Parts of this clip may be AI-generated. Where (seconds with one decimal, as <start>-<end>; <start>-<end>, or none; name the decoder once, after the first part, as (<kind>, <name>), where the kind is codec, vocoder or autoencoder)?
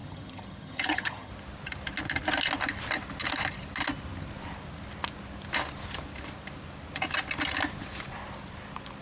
0.0-1.3 (vocoder, HiFi-GAN)